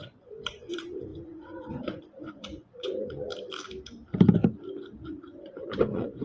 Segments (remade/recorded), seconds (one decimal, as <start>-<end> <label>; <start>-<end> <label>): 0.0-3.3 remade; 3.3-4.9 recorded; 4.9-6.2 remade

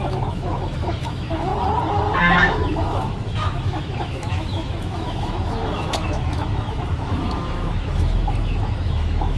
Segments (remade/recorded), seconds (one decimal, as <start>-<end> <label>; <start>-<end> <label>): 0.0-1.5 remade; 1.5-2.2 recorded; 2.2-9.4 remade

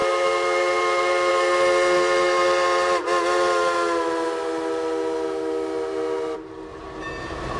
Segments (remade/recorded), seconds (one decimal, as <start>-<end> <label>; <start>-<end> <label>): 0.0-7.6 recorded

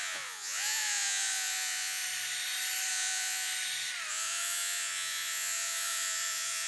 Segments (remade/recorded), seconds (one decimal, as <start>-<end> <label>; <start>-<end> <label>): 0.0-2.0 remade; 2.0-2.9 recorded; 2.9-3.5 remade; 3.5-4.1 recorded; 4.1-6.7 remade

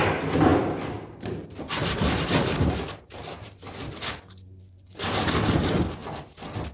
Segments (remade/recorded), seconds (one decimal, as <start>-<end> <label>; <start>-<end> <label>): 0.0-6.7 recorded